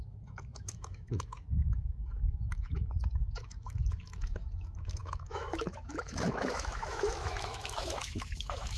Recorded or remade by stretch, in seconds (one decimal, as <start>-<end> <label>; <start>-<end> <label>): 0.0-8.8 remade